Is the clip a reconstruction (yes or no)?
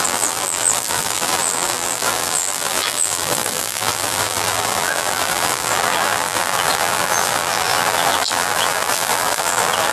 yes